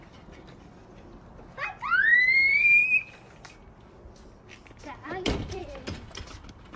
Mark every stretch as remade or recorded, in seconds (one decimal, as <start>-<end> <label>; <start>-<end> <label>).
0.0-0.8 remade; 0.8-1.9 recorded; 1.9-2.8 remade; 2.8-4.8 recorded; 4.8-6.8 remade